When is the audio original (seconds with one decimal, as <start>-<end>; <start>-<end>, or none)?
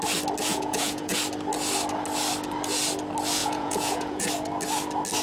0.0-0.5; 1.2-3.4; 4.3-5.2